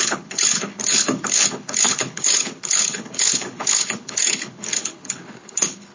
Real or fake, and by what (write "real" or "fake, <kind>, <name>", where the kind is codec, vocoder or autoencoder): fake, codec, HILCodec